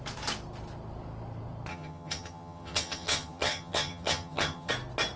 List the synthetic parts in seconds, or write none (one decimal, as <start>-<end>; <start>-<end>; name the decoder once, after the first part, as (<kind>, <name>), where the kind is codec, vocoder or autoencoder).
1.7-4.7 (vocoder, HiFi-GAN)